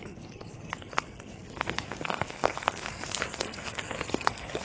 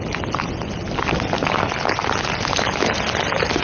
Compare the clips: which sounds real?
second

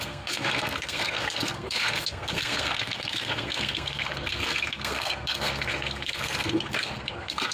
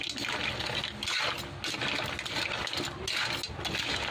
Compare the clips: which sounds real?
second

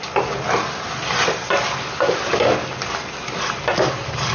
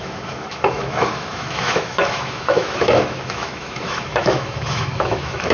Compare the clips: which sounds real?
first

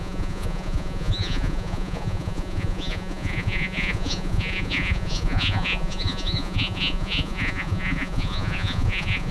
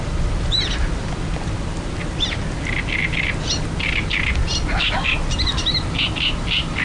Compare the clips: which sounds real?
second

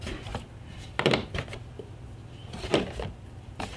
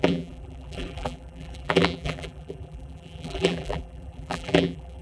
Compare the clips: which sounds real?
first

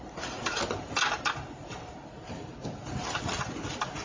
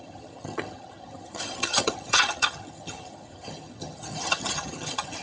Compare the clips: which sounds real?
first